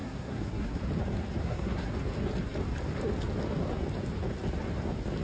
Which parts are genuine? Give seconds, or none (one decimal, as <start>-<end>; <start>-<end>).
0.8-1.4; 1.9-5.2

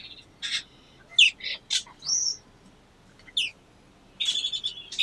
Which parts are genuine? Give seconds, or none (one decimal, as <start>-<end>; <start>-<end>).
0.0-5.0

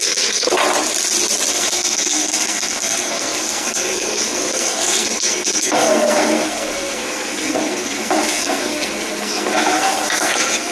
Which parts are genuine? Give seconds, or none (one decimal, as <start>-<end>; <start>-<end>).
0.6-1.5

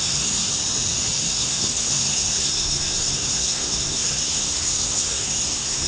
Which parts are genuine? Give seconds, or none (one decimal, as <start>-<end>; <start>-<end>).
0.6-1.2